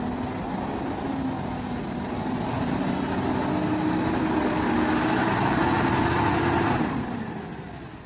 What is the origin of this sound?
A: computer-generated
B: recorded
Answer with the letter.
B